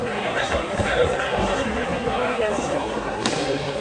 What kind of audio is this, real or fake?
fake